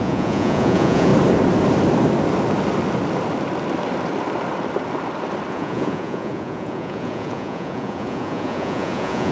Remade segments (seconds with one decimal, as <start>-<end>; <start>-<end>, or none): 0.0-1.1; 5.5-9.3